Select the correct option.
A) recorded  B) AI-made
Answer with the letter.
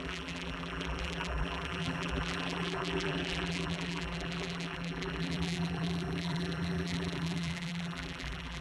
B